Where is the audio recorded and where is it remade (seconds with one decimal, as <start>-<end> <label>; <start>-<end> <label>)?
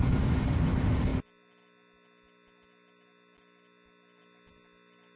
0.0-5.2 recorded